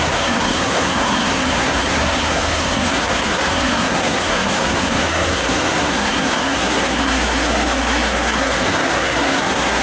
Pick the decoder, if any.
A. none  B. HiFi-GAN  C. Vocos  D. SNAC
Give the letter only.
D